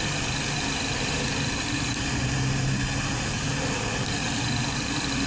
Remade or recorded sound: recorded